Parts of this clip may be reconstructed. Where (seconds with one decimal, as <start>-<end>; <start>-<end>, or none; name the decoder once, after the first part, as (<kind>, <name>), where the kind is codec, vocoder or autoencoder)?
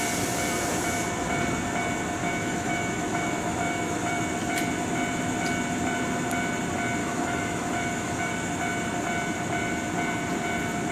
2.2-4.2 (autoencoder, DAC-VAE); 7.0-8.3